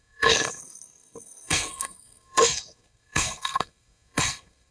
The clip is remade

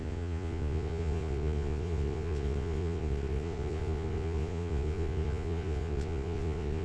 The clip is remade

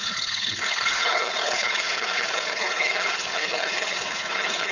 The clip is remade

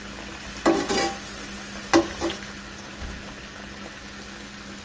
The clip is recorded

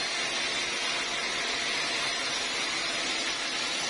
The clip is recorded